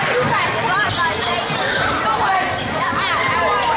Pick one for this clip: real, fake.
real